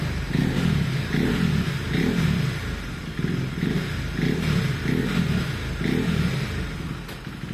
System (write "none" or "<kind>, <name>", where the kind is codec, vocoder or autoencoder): none